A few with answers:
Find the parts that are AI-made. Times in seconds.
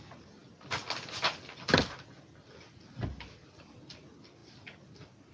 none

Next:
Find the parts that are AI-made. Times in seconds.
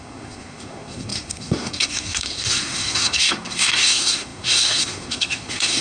0.0-5.8